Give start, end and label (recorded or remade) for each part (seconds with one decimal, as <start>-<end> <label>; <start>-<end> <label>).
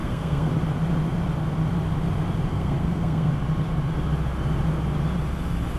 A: 0.0-0.5 remade; 0.5-2.5 recorded; 2.5-3.3 remade; 3.3-5.8 recorded